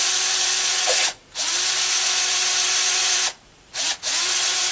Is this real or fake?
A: fake